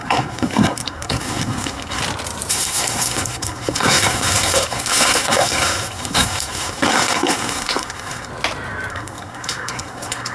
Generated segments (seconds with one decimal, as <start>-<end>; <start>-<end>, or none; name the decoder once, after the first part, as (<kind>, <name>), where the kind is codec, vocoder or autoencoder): 0.0-2.0 (codec, SNAC); 2.5-8.3; 8.9-10.3